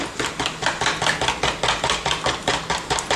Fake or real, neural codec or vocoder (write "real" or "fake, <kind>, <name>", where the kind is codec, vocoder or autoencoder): real